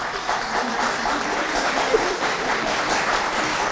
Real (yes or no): yes